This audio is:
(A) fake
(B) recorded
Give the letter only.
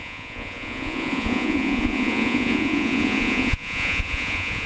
A